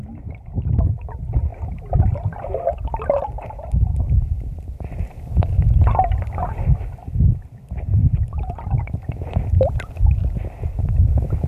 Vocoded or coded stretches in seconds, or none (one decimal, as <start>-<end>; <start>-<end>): none